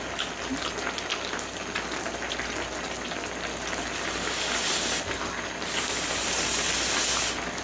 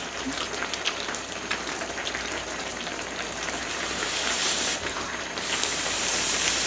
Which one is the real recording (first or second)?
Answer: first